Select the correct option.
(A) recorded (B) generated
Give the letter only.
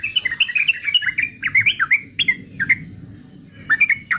A